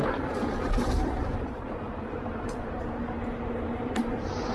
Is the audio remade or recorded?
remade